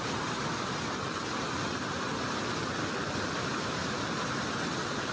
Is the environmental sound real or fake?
real